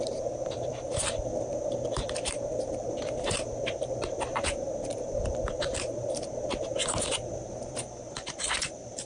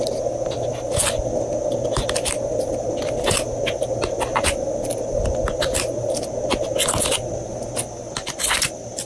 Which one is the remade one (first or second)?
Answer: first